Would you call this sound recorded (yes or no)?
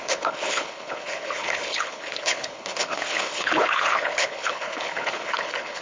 no